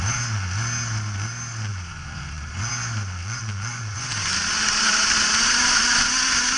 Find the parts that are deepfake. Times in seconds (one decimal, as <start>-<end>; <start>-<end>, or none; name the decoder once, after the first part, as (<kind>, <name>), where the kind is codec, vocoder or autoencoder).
1.7-2.7 (vocoder, Vocos); 3.2-4.1

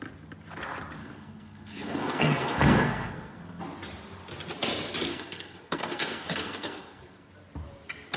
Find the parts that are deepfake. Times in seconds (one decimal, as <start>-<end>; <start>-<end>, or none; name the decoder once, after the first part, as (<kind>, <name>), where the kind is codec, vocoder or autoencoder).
1.0-3.6 (codec, SNAC); 5.1-7.3

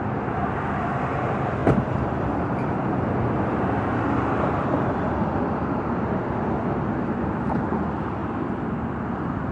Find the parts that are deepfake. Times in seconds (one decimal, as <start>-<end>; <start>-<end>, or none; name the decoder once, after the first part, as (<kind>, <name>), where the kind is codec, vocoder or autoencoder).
0.0-9.5 (vocoder, BigVGAN v2)

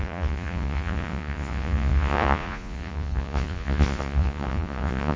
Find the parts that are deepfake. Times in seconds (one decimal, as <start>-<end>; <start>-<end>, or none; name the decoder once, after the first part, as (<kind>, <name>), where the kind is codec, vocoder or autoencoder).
0.0-5.2 (vocoder, Vocos)

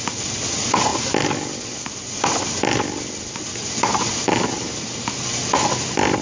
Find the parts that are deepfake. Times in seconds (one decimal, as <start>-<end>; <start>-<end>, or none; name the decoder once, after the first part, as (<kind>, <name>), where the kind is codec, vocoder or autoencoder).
none

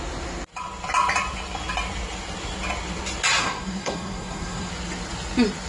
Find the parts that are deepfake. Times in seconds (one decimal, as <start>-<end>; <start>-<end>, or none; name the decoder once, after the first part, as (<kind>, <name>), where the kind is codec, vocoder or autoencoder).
3.4-4.7 (codec, SNAC)